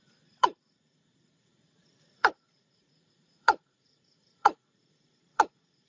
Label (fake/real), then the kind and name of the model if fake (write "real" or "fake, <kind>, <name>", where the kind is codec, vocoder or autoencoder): fake, vocoder, Vocos